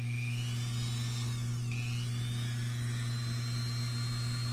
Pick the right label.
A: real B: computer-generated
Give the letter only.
A